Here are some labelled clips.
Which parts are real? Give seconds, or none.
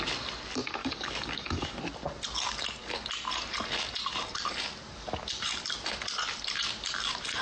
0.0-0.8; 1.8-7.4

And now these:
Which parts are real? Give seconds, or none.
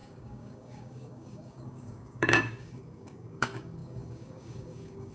none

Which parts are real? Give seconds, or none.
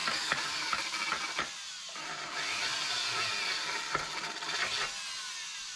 0.7-5.8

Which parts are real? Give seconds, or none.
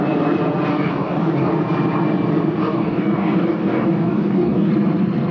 0.0-0.7; 1.5-2.6; 4.7-5.3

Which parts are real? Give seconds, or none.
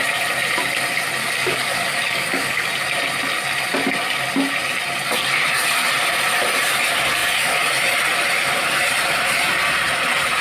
0.0-1.2; 2.7-10.4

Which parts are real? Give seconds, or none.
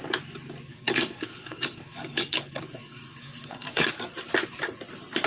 0.0-0.7; 3.9-5.3